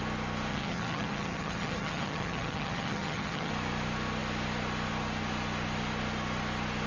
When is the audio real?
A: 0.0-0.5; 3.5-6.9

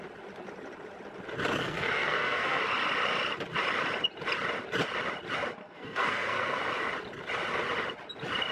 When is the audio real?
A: 0.0-1.6; 2.6-5.6; 6.6-8.5